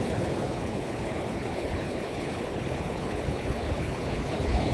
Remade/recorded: remade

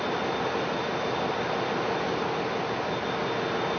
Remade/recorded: recorded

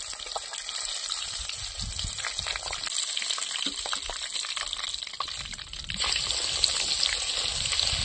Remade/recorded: recorded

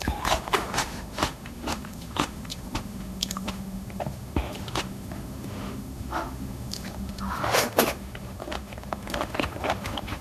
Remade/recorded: remade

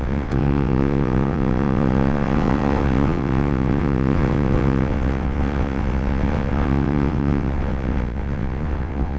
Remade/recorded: remade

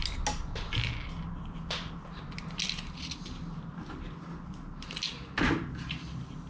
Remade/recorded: recorded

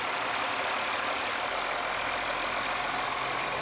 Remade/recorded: recorded